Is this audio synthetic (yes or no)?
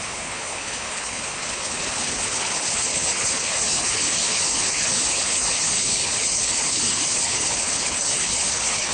yes